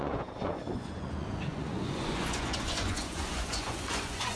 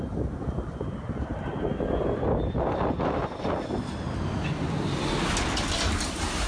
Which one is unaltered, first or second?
second